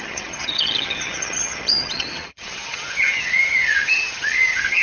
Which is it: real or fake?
fake